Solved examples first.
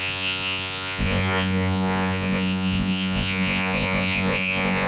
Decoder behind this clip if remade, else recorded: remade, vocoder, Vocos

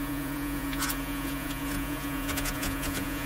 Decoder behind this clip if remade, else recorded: remade, vocoder, Vocos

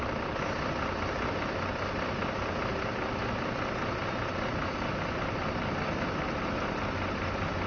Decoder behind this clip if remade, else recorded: recorded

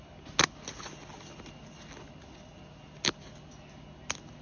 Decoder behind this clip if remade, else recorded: recorded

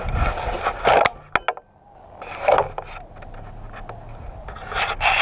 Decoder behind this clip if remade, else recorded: recorded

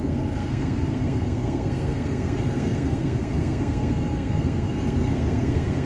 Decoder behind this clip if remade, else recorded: remade, codec, SNAC